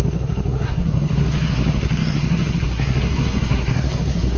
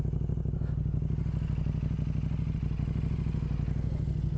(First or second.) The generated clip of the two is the first